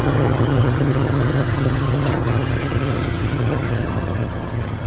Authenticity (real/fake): fake